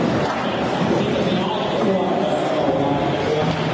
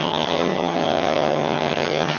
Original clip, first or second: first